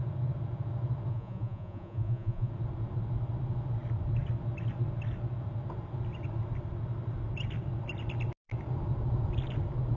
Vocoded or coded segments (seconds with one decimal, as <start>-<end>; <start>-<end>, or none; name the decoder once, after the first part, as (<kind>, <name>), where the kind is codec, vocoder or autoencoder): 1.1-2.5 (vocoder, Vocos)